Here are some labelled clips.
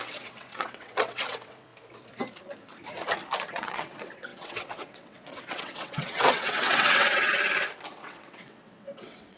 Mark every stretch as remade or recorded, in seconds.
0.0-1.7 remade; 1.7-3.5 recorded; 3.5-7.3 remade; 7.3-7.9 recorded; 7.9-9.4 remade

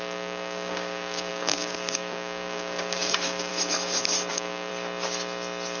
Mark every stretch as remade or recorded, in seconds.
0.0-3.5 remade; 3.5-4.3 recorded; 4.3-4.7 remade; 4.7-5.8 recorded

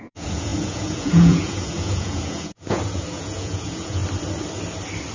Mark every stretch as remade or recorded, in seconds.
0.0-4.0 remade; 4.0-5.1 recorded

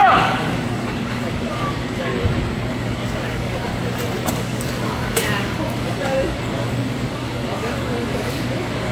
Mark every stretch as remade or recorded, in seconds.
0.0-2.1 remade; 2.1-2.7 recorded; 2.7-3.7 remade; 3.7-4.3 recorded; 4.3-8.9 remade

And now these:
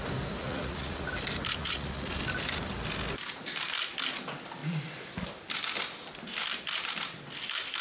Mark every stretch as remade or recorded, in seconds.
0.0-0.4 recorded; 0.4-1.1 remade; 1.1-1.6 recorded; 1.6-2.2 remade; 2.2-7.8 recorded